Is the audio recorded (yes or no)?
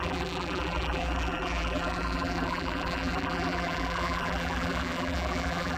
no